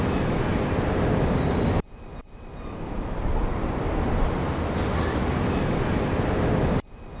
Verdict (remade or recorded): recorded